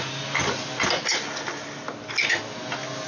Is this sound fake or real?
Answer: real